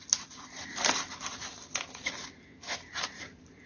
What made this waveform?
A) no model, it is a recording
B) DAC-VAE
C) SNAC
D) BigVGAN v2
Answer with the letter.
D